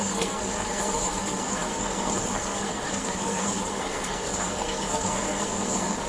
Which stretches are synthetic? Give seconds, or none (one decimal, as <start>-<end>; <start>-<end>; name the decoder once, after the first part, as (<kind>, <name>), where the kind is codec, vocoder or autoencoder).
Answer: 0.0-6.1 (codec, SNAC)